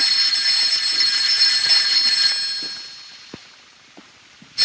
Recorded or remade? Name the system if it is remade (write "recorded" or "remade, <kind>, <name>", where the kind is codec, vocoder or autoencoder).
recorded